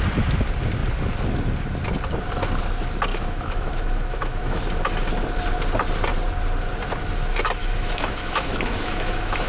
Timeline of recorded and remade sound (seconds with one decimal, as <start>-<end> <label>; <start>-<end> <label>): 0.0-3.1 recorded; 3.1-4.6 remade; 4.6-7.6 recorded; 7.6-9.5 remade